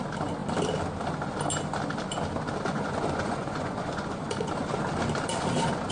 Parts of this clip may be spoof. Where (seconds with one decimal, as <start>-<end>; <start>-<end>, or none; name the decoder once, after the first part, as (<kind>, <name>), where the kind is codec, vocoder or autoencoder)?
2.7-4.5 (vocoder, Vocos)